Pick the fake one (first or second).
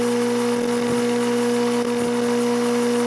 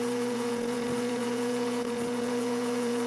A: second